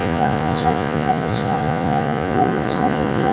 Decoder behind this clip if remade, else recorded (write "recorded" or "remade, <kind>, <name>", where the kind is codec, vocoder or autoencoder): remade, vocoder, Vocos